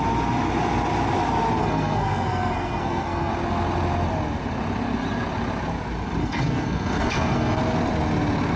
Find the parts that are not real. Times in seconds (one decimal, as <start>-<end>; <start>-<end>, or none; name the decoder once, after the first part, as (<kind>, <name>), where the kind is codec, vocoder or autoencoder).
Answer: 1.6-3.3 (codec, SNAC); 6.2-7.6